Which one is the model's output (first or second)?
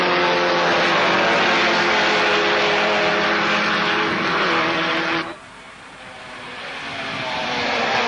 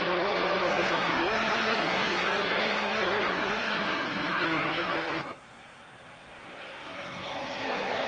second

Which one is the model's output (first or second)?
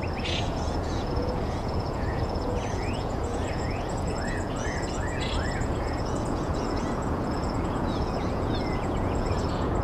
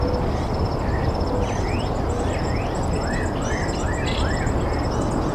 first